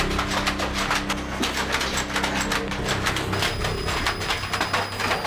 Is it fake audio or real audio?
real